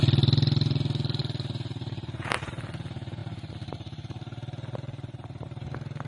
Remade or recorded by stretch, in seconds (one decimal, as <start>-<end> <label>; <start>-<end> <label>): 0.0-1.2 recorded; 1.2-2.5 remade; 2.5-3.2 recorded; 3.2-6.1 remade